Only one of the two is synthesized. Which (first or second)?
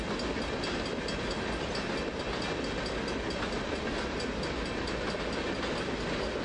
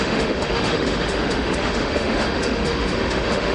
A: second